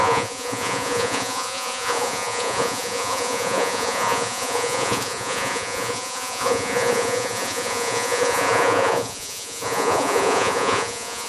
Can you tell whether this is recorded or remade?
remade